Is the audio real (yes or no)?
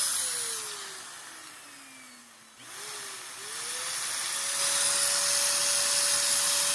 yes